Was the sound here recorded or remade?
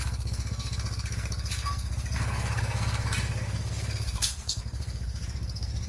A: remade